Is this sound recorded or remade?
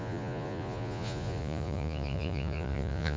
remade